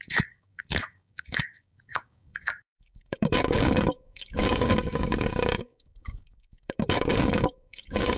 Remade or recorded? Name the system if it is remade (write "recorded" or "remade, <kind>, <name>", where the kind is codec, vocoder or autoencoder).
remade, codec, DAC